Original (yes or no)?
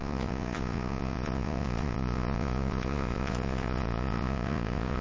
no